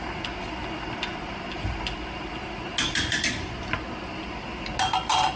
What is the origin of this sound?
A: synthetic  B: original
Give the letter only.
B